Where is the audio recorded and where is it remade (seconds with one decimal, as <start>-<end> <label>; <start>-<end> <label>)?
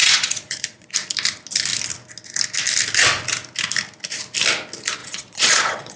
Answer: 0.0-0.9 remade; 0.9-5.0 recorded; 5.0-6.0 remade